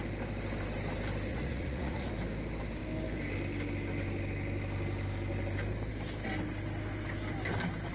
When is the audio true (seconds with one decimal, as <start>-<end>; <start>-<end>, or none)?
0.0-1.3; 2.1-7.9